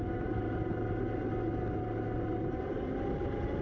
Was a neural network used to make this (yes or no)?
no